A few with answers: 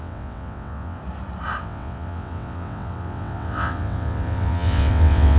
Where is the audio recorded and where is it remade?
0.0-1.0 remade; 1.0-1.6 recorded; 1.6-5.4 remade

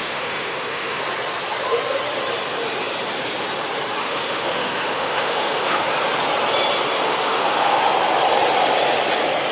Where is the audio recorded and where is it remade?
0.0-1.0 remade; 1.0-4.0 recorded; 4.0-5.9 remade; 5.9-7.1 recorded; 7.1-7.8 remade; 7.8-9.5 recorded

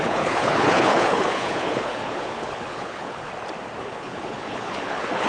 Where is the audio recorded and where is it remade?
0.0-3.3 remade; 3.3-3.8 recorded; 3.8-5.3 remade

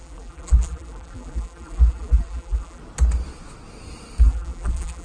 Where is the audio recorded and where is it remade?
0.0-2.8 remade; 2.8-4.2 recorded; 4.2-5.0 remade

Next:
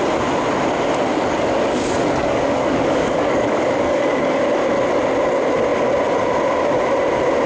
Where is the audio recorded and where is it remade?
0.0-1.1 recorded; 1.1-4.4 remade; 4.4-7.5 recorded

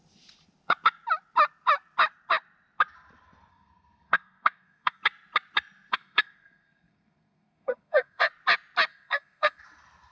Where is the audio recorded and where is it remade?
0.0-3.5 recorded; 3.5-5.0 remade; 5.0-5.9 recorded; 5.9-8.3 remade; 8.3-8.9 recorded; 8.9-9.6 remade; 9.6-10.1 recorded

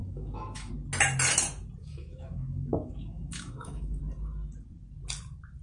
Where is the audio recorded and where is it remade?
0.0-0.7 remade; 0.7-1.8 recorded; 1.8-4.0 remade; 4.0-5.6 recorded

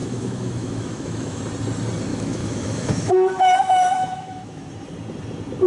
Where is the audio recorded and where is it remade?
0.0-1.4 remade; 1.4-2.1 recorded; 2.1-4.7 remade; 4.7-5.7 recorded